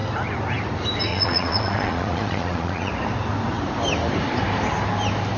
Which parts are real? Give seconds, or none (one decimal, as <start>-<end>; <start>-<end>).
0.0-1.1; 2.9-5.4